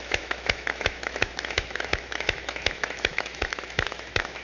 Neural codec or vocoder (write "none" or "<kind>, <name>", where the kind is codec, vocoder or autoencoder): autoencoder, DAC-VAE